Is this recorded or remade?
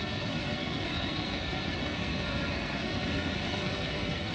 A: remade